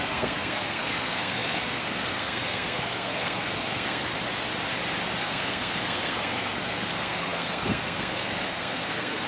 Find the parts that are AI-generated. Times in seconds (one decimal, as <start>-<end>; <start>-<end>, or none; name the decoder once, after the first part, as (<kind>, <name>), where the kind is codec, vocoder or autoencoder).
0.0-4.1 (codec, SNAC); 5.2-9.3